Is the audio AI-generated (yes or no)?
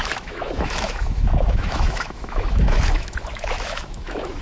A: yes